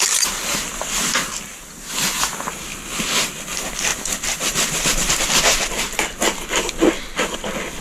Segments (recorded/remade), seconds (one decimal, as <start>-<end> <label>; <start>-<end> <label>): 0.0-3.9 recorded; 3.9-5.1 remade; 5.1-7.8 recorded